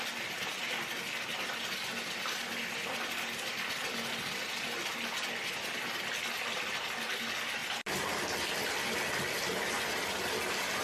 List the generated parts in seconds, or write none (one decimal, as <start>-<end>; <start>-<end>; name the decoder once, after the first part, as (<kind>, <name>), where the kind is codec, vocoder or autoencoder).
none